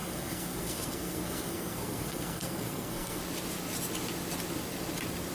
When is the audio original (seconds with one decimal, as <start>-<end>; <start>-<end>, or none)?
3.2-5.3